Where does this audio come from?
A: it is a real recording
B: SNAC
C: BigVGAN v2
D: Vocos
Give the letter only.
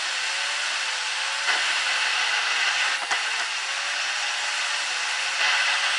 A